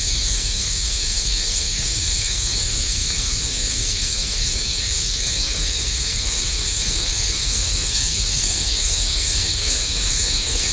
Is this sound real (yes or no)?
no